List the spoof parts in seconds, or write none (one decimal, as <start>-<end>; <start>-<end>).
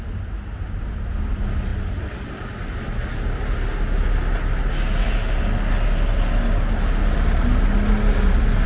none